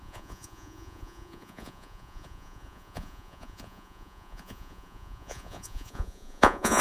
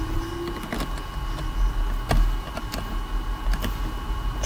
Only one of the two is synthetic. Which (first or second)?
first